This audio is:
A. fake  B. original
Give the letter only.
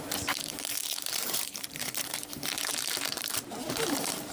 A